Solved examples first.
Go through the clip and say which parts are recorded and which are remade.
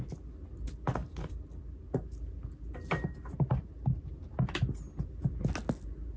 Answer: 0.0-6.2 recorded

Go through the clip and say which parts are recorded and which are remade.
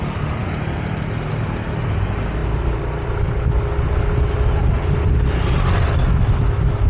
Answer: 0.0-6.9 recorded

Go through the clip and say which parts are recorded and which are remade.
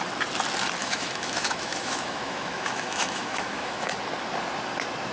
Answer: 0.0-0.8 recorded; 0.8-3.9 remade; 3.9-5.1 recorded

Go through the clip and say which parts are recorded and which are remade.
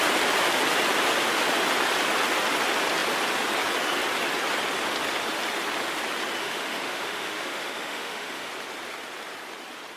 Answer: 0.0-6.4 recorded; 6.4-8.5 remade; 8.5-10.0 recorded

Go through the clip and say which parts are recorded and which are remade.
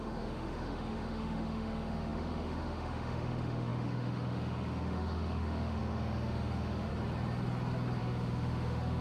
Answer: 0.0-6.9 remade; 6.9-8.0 recorded; 8.0-9.0 remade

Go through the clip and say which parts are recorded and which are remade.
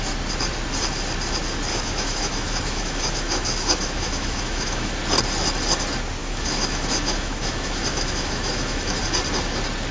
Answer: 0.0-1.7 recorded; 1.7-4.9 remade; 4.9-6.2 recorded; 6.2-9.0 remade; 9.0-9.9 recorded